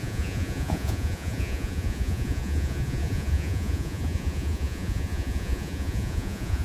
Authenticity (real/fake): fake